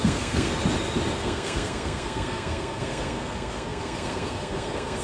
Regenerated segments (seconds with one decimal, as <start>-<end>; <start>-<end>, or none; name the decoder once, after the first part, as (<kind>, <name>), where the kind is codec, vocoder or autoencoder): 0.0-0.5 (codec, SNAC); 1.2-5.0

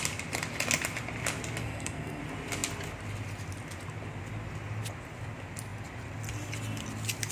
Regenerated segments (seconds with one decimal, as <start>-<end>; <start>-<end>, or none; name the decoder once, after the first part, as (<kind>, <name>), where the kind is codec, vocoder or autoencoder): 1.6-2.2 (codec, SNAC)

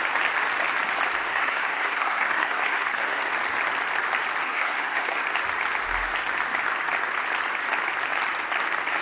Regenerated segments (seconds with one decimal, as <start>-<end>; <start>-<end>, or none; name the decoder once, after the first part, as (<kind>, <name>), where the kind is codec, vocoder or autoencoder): 1.3-3.3 (codec, SNAC); 4.4-5.2

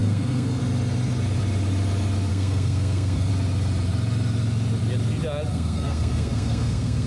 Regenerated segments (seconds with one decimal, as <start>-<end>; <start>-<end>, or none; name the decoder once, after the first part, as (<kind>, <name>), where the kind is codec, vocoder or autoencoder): 0.0-0.6 (codec, SNAC); 2.3-3.3; 5.5-7.1

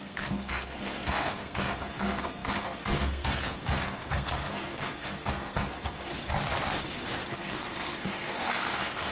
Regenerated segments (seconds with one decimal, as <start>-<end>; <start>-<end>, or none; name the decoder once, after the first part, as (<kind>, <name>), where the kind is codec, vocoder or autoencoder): 0.0-6.1 (codec, SNAC); 7.3-9.1